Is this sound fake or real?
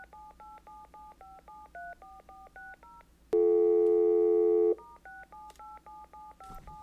real